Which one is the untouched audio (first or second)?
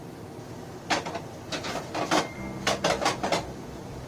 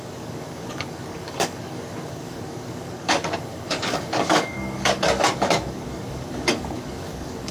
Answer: first